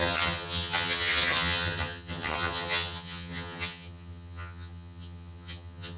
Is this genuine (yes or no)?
no